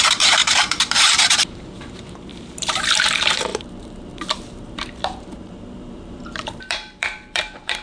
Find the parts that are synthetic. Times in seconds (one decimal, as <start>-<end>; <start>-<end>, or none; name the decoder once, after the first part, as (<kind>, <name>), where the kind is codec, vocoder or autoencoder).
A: 0.0-7.8 (vocoder, BigVGAN v2)